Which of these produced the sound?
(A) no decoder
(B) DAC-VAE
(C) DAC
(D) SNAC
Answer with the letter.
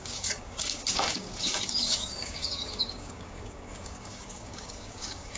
C